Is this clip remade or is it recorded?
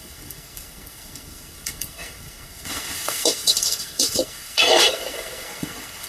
remade